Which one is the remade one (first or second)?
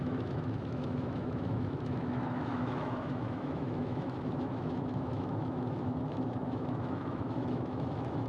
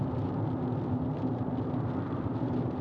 first